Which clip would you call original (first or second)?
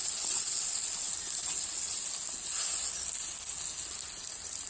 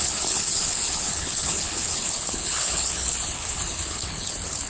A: first